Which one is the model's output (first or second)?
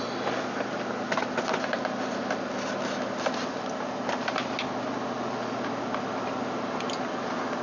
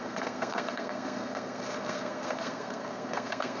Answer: second